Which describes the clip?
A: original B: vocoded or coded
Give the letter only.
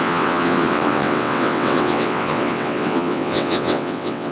B